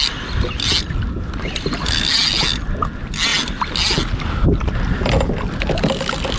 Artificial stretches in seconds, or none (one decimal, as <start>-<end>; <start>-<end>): none